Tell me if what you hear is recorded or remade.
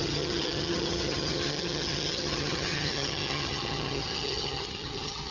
remade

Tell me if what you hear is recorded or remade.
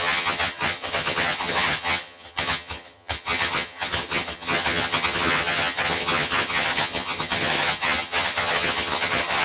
remade